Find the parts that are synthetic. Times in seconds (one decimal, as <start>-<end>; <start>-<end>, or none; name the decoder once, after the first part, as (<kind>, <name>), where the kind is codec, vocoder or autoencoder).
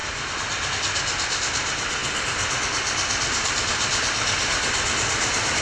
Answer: none